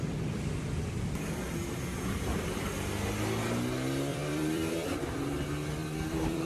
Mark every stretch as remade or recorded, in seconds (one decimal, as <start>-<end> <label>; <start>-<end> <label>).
0.0-4.1 recorded; 4.1-4.9 remade; 4.9-5.8 recorded; 5.8-6.5 remade